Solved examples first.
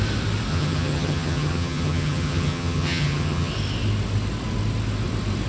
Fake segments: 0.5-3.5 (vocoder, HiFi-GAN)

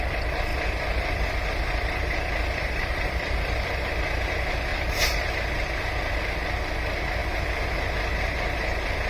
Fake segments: 0.5-3.9 (vocoder, BigVGAN v2); 4.7-5.3

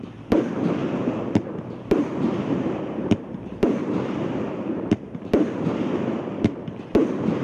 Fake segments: 0.8-5.2 (vocoder, BigVGAN v2)

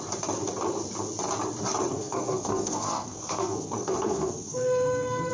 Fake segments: 2.0-5.3 (codec, SNAC)